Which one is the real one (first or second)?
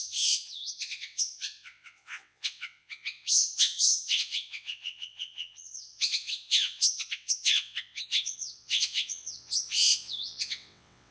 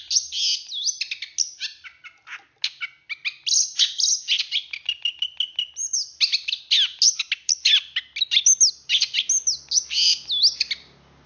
second